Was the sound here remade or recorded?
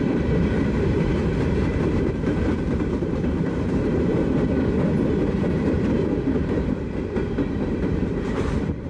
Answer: remade